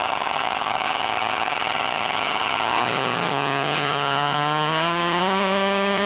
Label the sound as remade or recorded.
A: remade